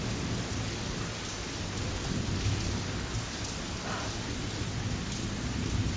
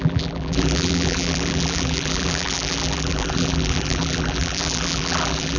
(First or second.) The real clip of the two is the first